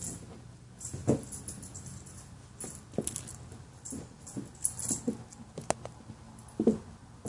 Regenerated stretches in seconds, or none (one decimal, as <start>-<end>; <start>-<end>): none